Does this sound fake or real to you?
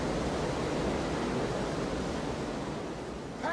real